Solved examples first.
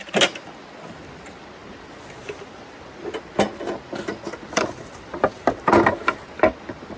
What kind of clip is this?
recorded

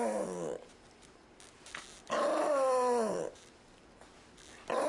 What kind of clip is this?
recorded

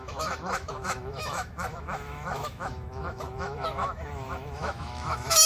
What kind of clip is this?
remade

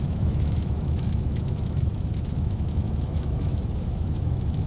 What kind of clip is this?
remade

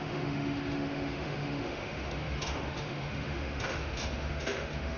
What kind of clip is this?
remade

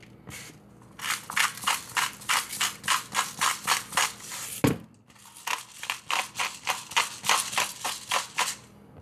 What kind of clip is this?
recorded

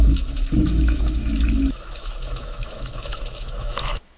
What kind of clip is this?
remade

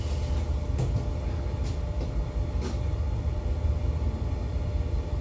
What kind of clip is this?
recorded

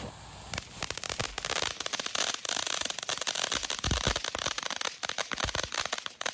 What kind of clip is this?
recorded